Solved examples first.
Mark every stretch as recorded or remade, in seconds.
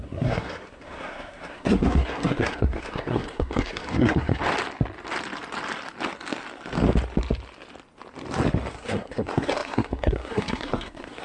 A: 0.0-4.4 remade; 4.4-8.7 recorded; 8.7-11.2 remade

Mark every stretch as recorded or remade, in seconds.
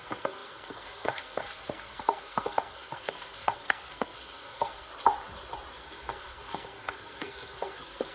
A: 0.0-4.9 remade; 4.9-5.7 recorded; 5.7-8.1 remade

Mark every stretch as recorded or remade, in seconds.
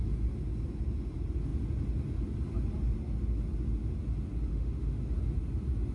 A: 0.0-4.5 recorded; 4.5-5.0 remade; 5.0-5.9 recorded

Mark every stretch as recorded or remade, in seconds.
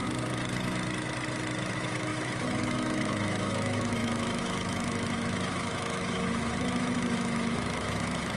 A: 0.0-1.7 recorded; 1.7-8.4 remade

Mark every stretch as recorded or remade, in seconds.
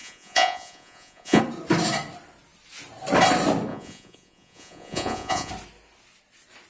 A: 0.0-1.4 remade; 1.4-3.7 recorded; 3.7-5.5 remade; 5.5-6.7 recorded